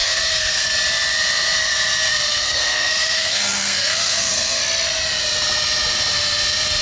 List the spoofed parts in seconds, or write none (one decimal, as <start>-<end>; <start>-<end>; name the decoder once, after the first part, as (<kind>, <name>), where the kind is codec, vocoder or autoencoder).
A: 0.0-0.7 (codec, SNAC); 2.3-4.6